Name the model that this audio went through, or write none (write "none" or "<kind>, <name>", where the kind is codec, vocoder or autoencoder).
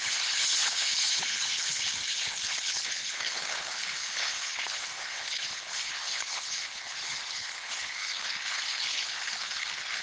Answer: codec, HILCodec